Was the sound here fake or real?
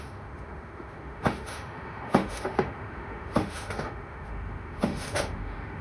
fake